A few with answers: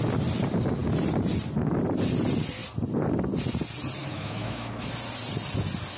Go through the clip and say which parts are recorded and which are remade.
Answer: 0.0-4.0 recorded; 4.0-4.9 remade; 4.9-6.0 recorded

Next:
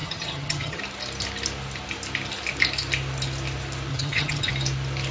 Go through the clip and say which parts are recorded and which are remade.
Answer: 0.0-0.8 remade; 0.8-3.9 recorded; 3.9-4.5 remade; 4.5-5.1 recorded

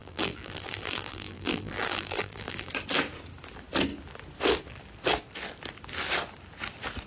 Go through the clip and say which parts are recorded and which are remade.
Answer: 0.0-2.7 remade; 2.7-7.1 recorded

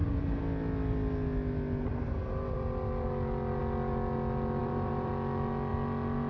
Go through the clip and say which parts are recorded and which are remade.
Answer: 0.0-4.6 recorded; 4.6-5.1 remade; 5.1-6.3 recorded

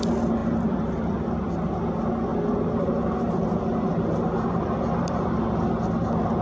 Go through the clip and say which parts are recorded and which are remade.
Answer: 0.0-0.4 recorded; 0.4-1.2 remade; 1.2-2.3 recorded; 2.3-5.4 remade; 5.4-6.4 recorded

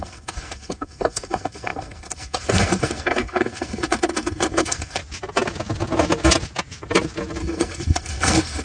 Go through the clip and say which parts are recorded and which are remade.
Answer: 0.0-5.0 remade; 5.0-7.4 recorded; 7.4-8.6 remade